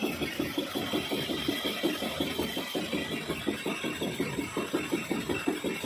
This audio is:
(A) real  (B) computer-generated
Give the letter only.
A